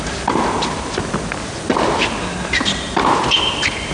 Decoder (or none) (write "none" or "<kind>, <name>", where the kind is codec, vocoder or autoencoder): none